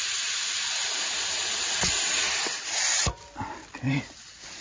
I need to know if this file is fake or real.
real